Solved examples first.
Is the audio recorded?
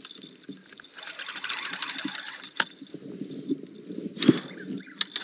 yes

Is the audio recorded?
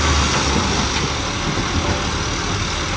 yes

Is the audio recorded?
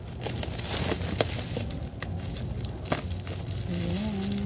yes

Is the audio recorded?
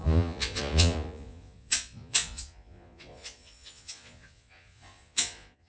no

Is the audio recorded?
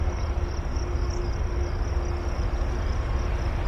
yes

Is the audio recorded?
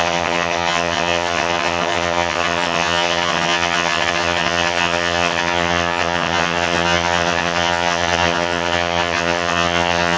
no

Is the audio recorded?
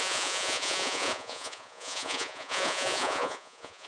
no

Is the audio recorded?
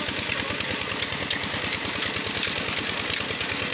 yes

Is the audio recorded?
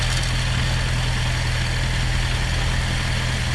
yes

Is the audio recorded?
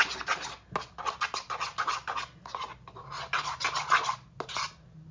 yes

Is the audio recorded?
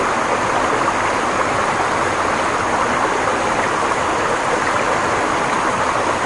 yes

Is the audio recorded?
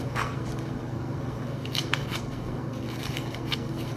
no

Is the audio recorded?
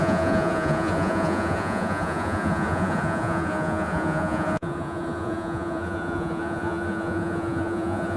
no